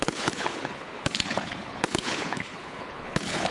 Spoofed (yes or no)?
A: yes